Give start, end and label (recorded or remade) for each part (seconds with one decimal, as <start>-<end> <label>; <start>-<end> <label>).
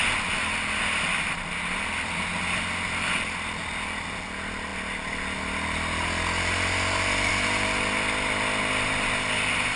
0.0-9.8 recorded